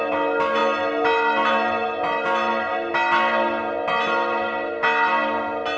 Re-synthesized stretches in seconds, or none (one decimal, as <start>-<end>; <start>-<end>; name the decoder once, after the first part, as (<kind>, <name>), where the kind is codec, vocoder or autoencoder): none